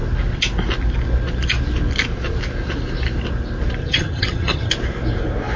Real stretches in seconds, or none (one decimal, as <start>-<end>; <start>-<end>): 0.0-3.8; 4.7-5.6